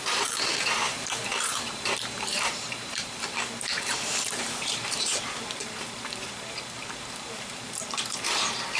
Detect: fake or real fake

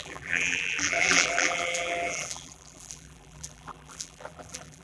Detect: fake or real fake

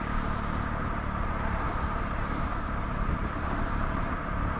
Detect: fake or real fake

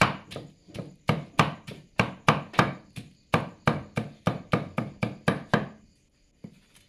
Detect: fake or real fake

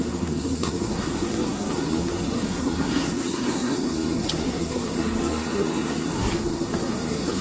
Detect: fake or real fake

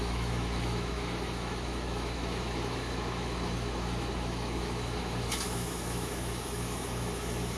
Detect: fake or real fake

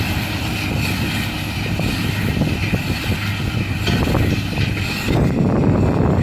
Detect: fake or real real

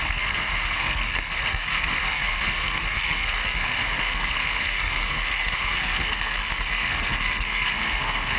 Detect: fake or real fake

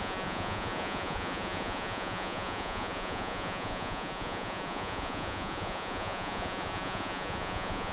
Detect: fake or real fake